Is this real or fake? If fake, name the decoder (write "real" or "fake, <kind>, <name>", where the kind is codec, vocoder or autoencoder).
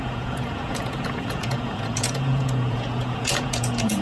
fake, vocoder, Vocos